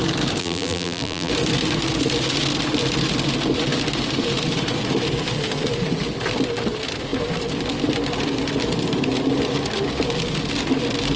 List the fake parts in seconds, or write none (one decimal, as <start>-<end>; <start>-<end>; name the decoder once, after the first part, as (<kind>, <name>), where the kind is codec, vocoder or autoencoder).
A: 0.4-1.3 (vocoder, BigVGAN v2)